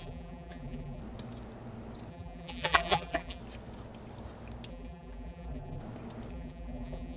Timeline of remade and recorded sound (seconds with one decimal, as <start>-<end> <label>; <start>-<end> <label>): 0.0-1.0 remade; 1.0-2.1 recorded; 2.1-3.4 remade; 3.4-4.7 recorded; 4.7-5.8 remade; 5.8-6.3 recorded; 6.3-7.2 remade